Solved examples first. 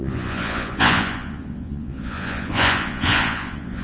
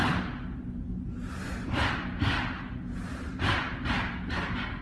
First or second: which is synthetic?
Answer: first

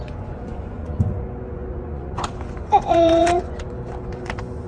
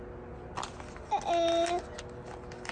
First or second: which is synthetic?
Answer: first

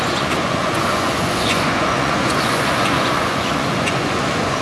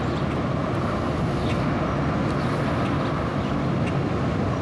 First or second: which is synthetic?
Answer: first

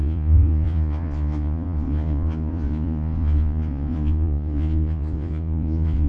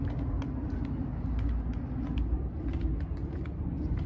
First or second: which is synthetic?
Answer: first